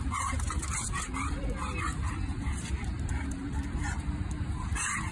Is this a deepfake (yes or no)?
yes